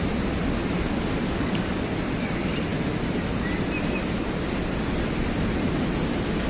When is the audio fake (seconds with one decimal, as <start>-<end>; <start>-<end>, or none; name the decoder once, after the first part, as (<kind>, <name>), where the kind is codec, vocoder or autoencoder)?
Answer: 0.9-1.7 (codec, DAC)